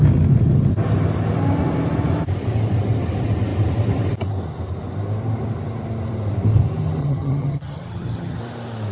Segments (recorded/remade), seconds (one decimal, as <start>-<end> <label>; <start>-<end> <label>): 0.0-7.0 recorded; 7.0-8.4 remade; 8.4-8.9 recorded